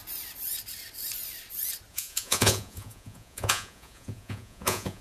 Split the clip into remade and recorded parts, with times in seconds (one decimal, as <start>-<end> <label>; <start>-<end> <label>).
0.0-1.9 recorded; 1.9-5.0 remade